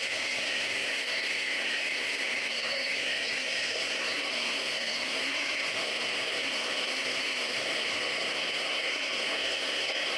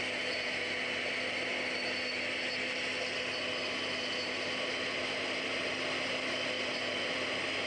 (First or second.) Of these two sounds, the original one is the second